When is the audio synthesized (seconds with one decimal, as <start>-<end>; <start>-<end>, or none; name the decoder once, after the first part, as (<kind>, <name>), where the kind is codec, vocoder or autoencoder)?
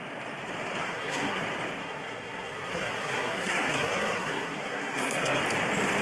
0.8-1.4 (codec, SNAC); 1.8-5.4